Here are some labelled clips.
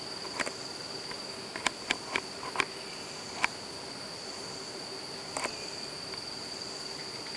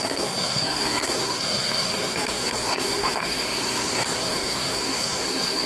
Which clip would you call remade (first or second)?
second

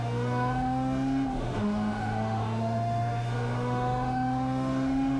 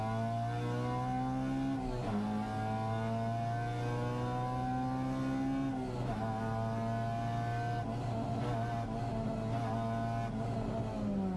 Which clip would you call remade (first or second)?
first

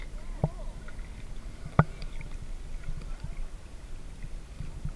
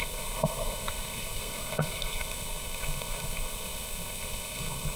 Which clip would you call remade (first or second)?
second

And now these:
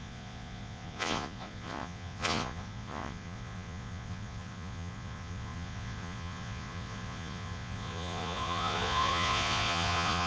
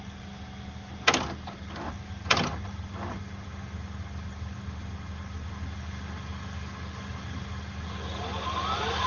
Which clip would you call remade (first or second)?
first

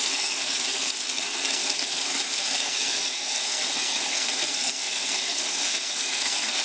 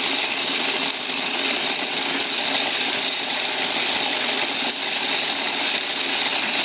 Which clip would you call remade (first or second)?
first